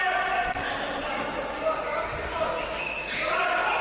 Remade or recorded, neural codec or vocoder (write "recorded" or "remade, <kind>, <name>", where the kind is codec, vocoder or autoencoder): recorded